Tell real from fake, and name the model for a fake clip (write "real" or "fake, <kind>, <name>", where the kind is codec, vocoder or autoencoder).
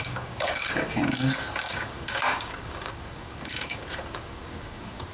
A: fake, codec, DAC